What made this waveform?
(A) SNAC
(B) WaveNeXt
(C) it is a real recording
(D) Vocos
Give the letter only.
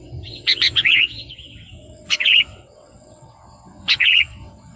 B